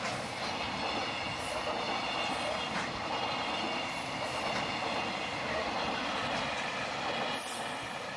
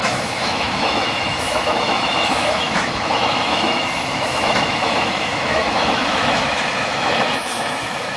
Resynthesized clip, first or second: second